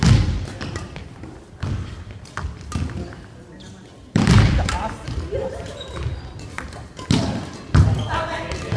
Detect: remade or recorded recorded